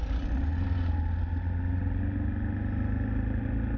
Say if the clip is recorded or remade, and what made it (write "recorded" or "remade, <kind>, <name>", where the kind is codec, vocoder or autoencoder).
recorded